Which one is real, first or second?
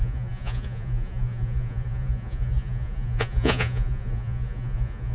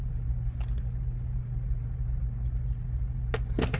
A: second